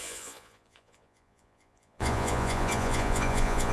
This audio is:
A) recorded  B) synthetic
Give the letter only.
B